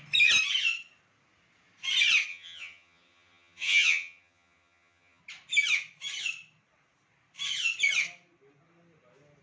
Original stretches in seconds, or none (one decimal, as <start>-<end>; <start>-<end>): 0.0-2.3; 5.2-9.4